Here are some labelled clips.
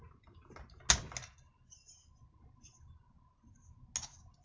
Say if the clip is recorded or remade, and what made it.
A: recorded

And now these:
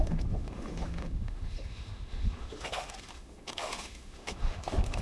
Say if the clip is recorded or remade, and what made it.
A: remade, autoencoder, DAC-VAE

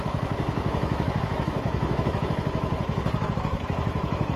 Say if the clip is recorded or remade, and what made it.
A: remade, autoencoder, DAC-VAE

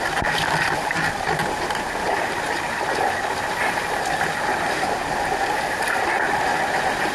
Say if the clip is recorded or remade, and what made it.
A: recorded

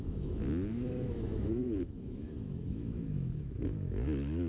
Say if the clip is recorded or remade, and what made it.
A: remade, autoencoder, DAC-VAE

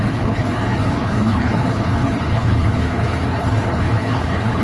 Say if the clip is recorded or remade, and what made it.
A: remade, codec, HILCodec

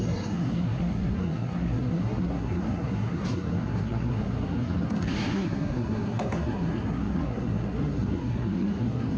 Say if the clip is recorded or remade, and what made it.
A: remade, codec, SNAC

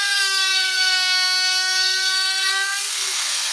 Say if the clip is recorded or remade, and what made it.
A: remade, codec, SNAC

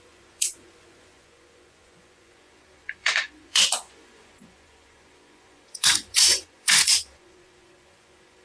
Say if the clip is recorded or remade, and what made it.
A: remade, vocoder, Vocos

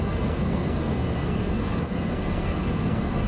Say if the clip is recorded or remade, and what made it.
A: remade, codec, SNAC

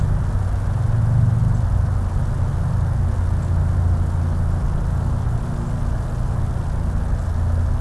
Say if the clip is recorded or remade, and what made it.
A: recorded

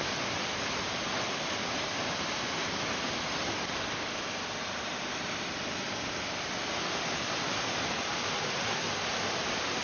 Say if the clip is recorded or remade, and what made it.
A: remade, vocoder, BigVGAN v2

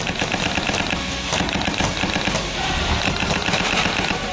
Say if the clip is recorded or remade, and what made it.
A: recorded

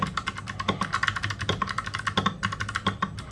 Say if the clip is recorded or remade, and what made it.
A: recorded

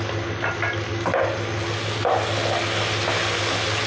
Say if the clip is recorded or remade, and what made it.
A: recorded